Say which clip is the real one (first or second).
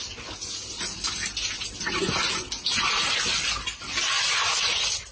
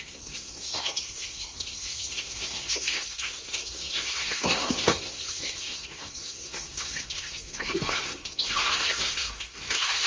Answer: first